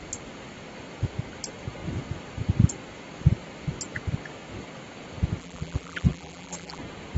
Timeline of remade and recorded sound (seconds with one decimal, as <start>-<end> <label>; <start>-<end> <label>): 0.0-5.4 recorded; 5.4-6.8 remade; 6.8-7.2 recorded